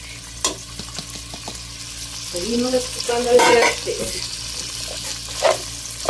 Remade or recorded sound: recorded